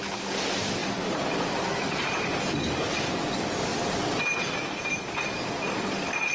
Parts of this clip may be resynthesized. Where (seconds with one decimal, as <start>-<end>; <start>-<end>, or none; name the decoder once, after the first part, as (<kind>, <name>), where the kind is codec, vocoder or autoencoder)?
none